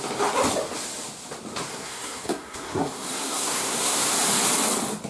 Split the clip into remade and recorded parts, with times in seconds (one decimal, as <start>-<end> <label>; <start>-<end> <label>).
0.0-1.7 recorded; 1.7-4.1 remade; 4.1-5.1 recorded